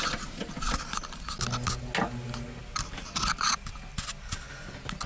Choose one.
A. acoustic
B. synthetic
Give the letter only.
A